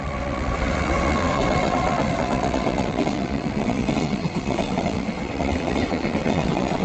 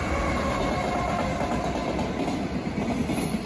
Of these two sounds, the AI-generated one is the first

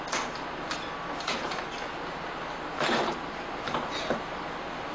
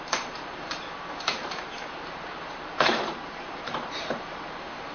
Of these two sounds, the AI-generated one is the second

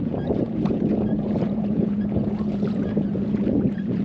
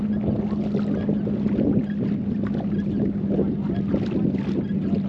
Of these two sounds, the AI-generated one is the first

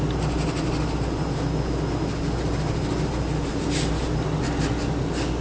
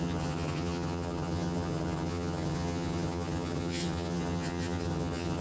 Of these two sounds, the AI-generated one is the second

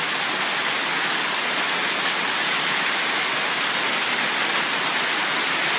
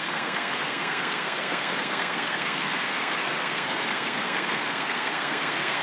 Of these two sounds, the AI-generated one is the second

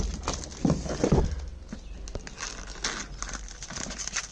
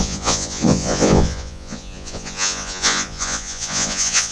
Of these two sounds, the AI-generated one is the second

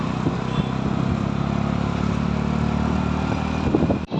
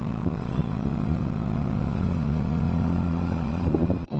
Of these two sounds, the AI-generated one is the second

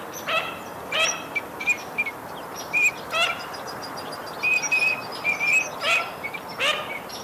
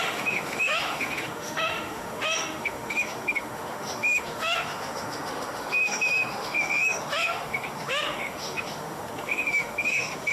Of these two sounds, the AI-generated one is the second